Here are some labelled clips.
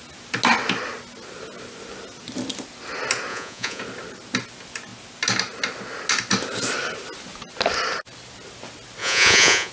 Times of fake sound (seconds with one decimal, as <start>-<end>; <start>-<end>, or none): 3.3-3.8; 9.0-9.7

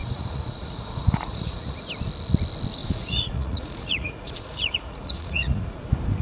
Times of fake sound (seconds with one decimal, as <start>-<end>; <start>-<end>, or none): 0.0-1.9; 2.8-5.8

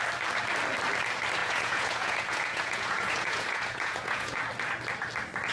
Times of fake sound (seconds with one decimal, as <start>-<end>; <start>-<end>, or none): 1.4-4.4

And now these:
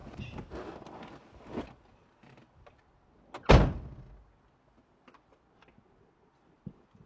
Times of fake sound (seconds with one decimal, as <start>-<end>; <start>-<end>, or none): none

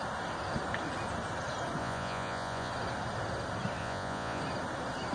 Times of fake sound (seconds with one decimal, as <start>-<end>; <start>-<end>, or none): 1.8-2.7; 3.8-4.4

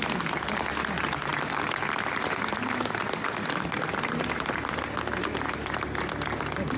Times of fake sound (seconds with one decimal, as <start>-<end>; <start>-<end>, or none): none

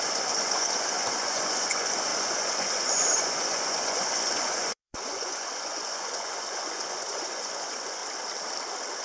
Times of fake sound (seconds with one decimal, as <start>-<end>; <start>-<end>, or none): 0.0-8.0

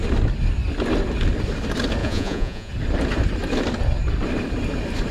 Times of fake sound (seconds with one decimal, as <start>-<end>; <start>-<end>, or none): 2.0-2.7